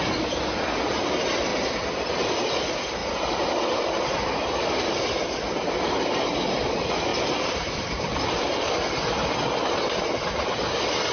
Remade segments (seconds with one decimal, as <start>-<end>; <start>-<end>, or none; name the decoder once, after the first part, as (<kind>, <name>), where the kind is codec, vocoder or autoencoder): none